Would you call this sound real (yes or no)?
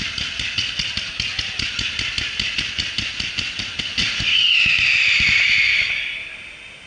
yes